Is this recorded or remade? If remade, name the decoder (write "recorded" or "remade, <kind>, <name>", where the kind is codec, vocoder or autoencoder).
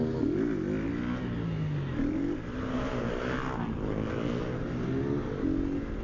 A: recorded